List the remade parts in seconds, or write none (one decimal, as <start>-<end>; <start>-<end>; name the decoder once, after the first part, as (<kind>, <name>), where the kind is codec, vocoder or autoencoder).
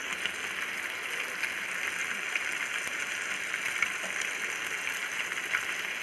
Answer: 2.0-4.3 (vocoder, BigVGAN v2)